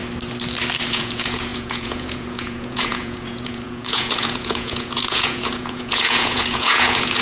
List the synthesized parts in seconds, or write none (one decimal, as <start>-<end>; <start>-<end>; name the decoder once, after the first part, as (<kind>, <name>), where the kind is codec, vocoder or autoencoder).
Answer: 0.9-7.2 (vocoder, Vocos)

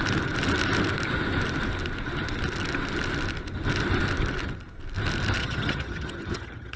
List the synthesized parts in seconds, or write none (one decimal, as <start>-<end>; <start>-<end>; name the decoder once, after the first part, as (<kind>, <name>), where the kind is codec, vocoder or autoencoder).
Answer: 5.4-6.8 (vocoder, HiFi-GAN)